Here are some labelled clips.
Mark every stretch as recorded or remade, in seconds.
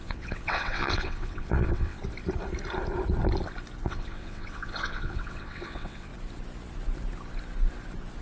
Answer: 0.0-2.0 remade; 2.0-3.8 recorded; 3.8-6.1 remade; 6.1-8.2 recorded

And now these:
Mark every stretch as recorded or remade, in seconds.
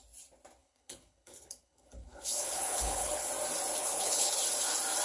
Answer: 0.0-0.6 recorded; 0.6-3.3 remade; 3.3-3.8 recorded; 3.8-4.4 remade; 4.4-5.0 recorded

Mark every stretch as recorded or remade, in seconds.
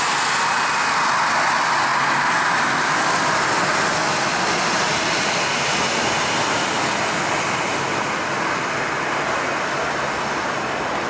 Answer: 0.0-4.3 recorded; 4.3-5.3 remade; 5.3-11.1 recorded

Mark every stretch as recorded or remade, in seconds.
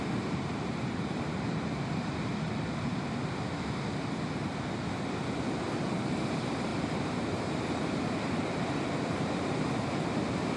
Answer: 0.0-2.3 remade; 2.3-5.2 recorded; 5.2-10.6 remade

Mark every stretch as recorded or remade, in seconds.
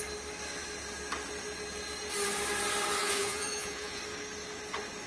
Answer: 0.0-3.0 recorded; 3.0-4.0 remade; 4.0-5.1 recorded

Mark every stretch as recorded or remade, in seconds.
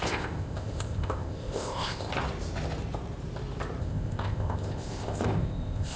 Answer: 0.0-2.1 remade; 2.1-3.8 recorded; 3.8-6.0 remade